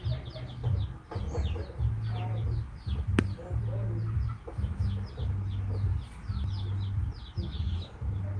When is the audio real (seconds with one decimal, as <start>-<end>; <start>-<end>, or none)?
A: 0.0-8.4